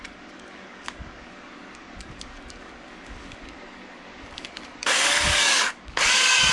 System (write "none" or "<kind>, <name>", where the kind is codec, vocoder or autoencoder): codec, DAC